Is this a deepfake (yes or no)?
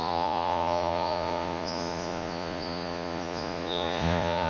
yes